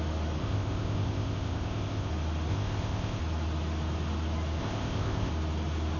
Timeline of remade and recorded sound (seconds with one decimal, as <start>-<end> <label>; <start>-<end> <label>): 0.0-0.4 recorded; 0.4-2.1 remade; 2.1-2.5 recorded; 2.5-3.2 remade; 3.2-4.6 recorded; 4.6-5.3 remade; 5.3-6.0 recorded

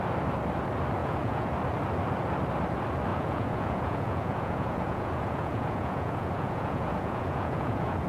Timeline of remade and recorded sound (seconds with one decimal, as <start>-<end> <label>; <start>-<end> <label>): 0.0-1.0 recorded; 1.0-1.5 remade; 1.5-3.1 recorded; 3.1-8.1 remade

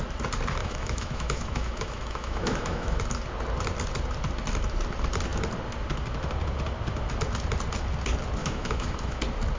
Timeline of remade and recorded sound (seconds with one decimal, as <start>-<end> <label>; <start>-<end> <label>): 0.0-0.6 recorded; 0.6-3.0 remade; 3.0-8.4 recorded; 8.4-9.2 remade; 9.2-9.6 recorded